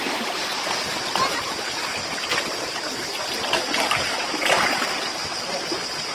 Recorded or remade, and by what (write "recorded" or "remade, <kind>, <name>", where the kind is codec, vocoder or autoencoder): recorded